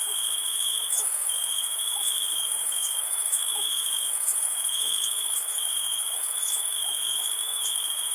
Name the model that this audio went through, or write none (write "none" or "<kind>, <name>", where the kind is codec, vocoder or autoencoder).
autoencoder, DAC-VAE